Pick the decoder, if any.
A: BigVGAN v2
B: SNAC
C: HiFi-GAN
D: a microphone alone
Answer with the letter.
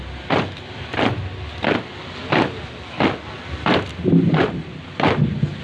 D